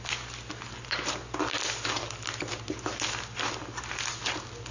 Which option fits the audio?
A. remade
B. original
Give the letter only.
B